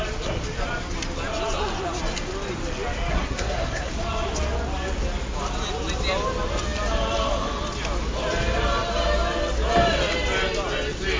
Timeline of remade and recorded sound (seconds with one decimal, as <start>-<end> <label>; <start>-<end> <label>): 0.0-3.1 recorded; 3.1-3.9 remade; 3.9-11.2 recorded